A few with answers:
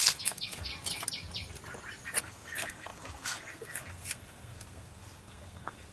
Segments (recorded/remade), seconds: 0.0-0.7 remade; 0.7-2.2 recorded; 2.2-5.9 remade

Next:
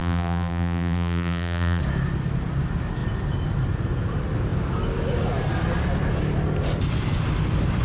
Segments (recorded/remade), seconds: 0.0-1.8 remade; 1.8-7.8 recorded